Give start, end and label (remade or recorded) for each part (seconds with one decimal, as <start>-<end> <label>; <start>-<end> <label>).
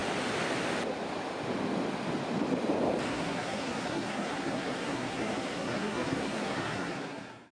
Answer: 0.0-3.1 recorded; 3.1-7.5 remade